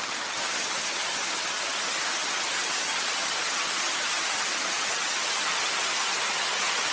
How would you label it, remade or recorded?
remade